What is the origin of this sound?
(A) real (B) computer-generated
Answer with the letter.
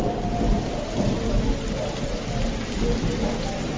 A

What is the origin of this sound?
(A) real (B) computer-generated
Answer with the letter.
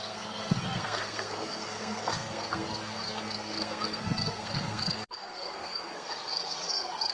B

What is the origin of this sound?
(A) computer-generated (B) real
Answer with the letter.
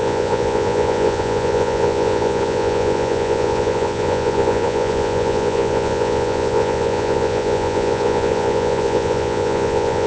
A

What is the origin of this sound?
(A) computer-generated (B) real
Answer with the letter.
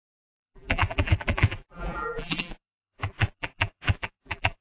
A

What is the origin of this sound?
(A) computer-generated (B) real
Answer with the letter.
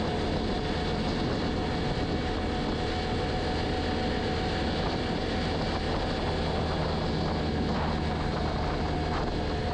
B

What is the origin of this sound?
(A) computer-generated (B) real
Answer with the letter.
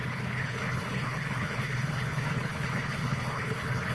A